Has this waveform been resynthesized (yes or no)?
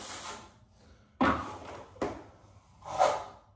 no